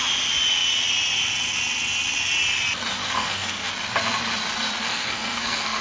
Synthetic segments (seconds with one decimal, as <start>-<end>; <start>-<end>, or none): 3.0-3.7; 4.9-5.8